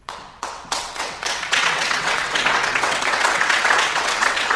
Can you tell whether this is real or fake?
fake